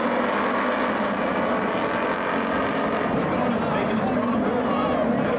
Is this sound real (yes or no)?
yes